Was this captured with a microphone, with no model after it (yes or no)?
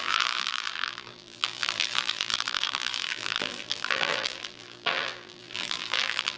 no